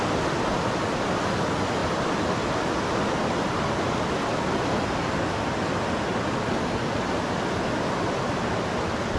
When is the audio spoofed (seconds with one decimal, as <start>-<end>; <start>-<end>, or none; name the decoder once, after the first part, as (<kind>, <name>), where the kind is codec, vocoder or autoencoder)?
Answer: none